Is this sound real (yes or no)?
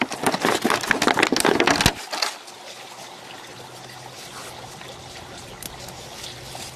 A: yes